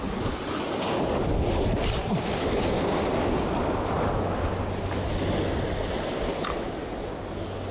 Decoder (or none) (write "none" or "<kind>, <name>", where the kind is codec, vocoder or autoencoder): none